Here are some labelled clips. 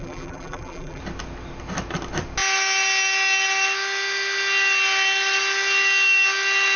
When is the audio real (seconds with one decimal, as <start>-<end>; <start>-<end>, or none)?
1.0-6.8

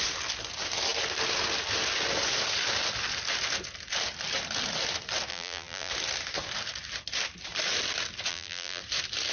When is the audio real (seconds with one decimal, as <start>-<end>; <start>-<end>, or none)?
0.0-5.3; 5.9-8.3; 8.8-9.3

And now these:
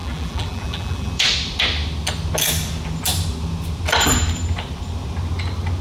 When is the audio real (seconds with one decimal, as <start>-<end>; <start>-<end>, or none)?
1.1-5.8

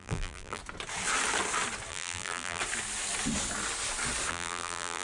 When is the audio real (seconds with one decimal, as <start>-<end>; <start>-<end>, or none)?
0.6-1.9; 2.6-4.3

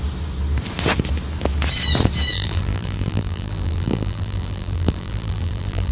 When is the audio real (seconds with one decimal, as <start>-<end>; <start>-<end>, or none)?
0.0-2.3